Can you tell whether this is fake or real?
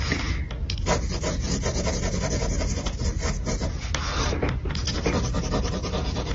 real